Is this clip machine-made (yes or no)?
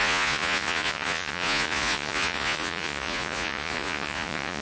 yes